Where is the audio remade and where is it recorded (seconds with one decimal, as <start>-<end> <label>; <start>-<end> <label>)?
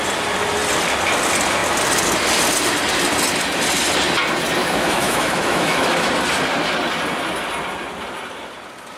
0.0-4.6 recorded; 4.6-6.1 remade; 6.1-9.0 recorded